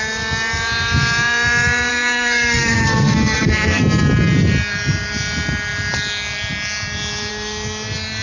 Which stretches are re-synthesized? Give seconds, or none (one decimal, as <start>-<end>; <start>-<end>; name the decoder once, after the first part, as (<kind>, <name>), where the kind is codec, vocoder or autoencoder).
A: 1.9-3.8 (codec, SNAC)